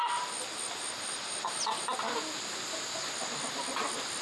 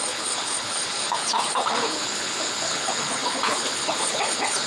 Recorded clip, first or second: first